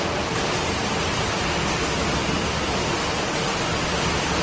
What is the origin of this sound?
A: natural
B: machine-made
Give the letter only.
A